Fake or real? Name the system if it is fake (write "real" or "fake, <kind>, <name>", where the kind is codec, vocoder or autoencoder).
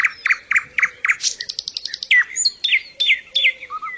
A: real